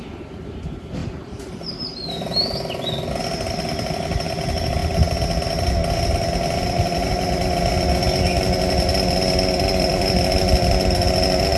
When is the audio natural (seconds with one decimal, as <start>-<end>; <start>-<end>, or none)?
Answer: none